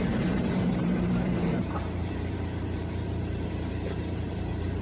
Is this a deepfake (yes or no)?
yes